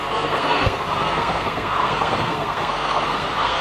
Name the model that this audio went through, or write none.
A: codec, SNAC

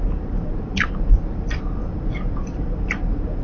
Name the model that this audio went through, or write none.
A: vocoder, BigVGAN v2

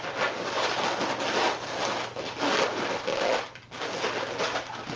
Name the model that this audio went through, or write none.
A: none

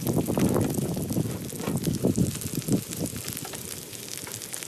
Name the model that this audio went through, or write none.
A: none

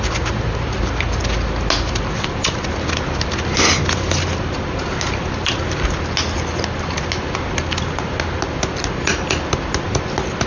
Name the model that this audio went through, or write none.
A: none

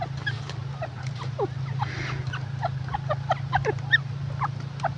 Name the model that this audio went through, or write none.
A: none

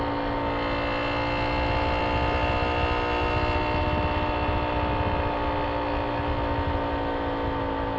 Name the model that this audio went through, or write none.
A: none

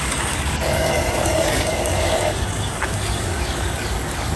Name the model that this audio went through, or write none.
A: codec, DAC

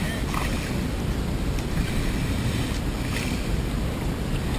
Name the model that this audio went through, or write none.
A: none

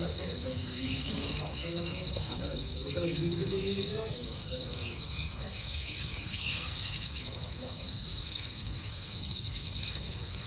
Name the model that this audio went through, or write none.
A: codec, SNAC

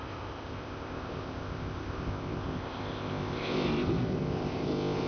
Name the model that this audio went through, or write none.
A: codec, ZipCodec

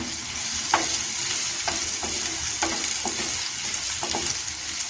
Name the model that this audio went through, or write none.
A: none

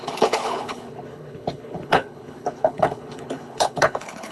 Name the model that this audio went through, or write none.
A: codec, HILCodec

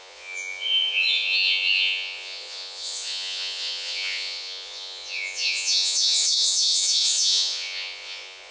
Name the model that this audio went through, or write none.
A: vocoder, Vocos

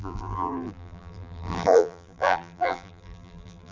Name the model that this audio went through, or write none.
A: vocoder, BigVGAN v2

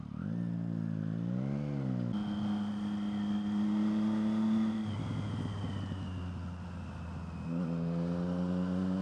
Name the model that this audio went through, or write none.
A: none